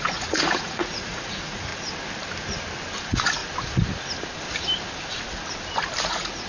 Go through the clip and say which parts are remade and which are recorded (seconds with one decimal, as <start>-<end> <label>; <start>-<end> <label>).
0.0-1.7 remade; 1.7-3.0 recorded; 3.0-3.4 remade; 3.4-6.0 recorded; 6.0-6.5 remade